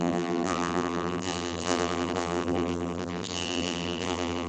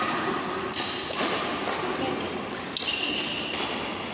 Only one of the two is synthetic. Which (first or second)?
first